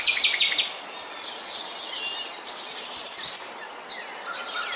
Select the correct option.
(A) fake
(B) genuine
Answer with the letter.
B